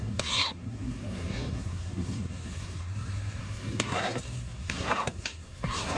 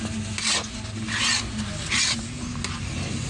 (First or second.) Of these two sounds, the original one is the second